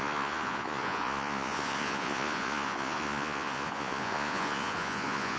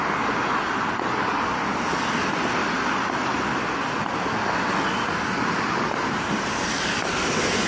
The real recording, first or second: second